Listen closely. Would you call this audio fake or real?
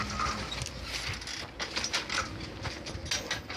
real